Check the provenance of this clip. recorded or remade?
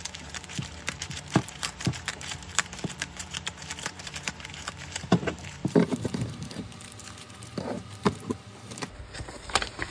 remade